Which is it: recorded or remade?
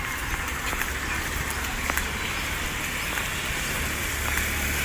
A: recorded